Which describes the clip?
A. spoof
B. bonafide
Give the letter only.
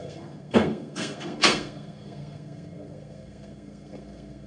A